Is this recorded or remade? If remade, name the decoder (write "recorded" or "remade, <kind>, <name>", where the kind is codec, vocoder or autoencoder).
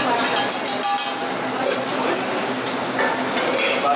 recorded